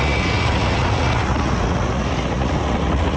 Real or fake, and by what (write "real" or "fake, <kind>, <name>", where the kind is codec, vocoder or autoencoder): fake, vocoder, Vocos